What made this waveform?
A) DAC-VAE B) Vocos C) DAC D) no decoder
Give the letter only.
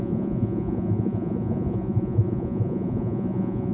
B